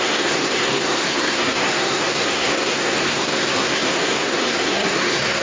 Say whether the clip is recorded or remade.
remade